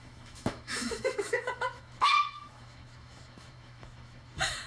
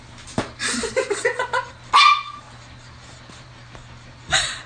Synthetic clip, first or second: first